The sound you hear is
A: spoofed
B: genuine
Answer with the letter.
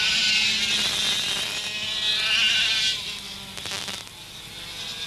B